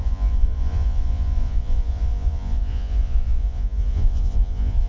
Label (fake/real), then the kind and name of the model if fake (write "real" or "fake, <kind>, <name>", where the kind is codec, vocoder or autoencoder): fake, vocoder, Vocos